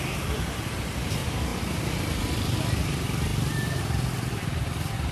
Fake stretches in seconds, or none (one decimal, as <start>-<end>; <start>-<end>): 0.0-1.5; 2.2-5.1